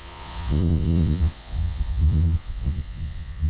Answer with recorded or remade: remade